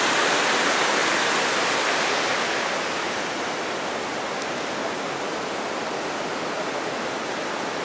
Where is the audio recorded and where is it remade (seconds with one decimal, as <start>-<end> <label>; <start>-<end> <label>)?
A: 0.0-7.8 recorded